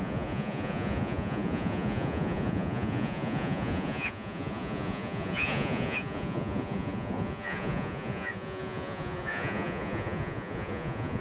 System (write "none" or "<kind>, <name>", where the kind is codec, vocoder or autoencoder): vocoder, Vocos